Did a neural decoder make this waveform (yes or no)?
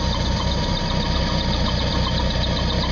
no